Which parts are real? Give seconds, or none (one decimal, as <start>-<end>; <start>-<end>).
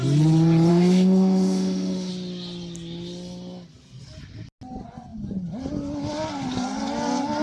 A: 0.0-0.7; 2.1-7.4